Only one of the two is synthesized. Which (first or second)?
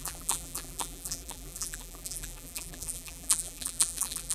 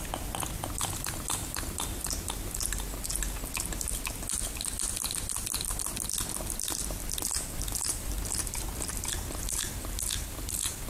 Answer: first